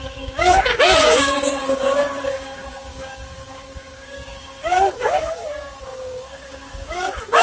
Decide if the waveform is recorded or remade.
remade